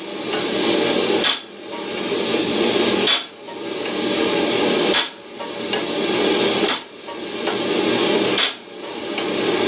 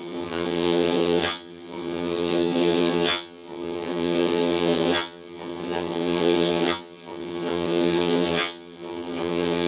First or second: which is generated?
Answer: second